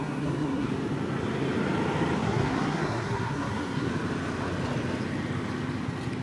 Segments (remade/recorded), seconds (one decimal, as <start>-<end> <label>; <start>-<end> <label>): 0.0-0.7 remade; 0.7-2.2 recorded; 2.2-3.9 remade; 3.9-6.2 recorded